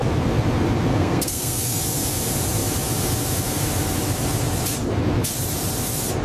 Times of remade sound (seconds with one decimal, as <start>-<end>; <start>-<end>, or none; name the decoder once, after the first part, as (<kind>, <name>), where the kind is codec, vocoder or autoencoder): 0.9-1.8 (codec, SNAC)